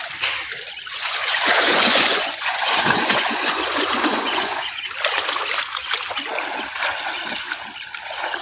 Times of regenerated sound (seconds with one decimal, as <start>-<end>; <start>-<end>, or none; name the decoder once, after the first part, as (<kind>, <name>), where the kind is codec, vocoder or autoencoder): 0.9-4.9 (vocoder, Vocos)